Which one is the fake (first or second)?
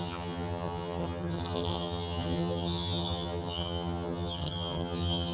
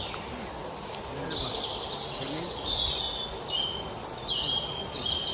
first